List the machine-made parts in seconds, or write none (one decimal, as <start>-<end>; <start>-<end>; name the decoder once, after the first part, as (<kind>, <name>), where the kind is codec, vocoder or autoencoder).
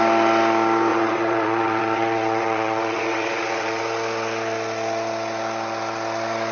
0.9-3.8 (vocoder, WaveNeXt)